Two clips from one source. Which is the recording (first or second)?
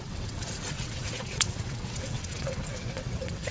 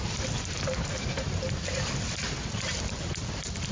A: second